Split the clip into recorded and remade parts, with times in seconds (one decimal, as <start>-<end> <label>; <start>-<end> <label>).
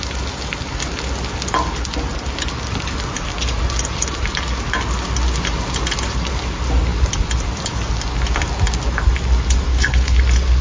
0.0-9.7 recorded; 9.7-10.2 remade; 10.2-10.6 recorded